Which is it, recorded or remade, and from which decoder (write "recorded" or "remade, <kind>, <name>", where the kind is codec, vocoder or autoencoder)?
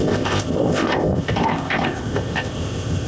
remade, codec, ZipCodec